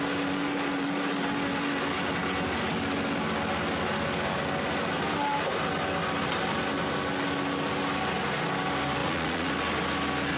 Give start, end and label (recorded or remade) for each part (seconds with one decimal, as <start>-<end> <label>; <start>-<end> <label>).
0.0-9.0 recorded; 9.0-9.5 remade; 9.5-10.4 recorded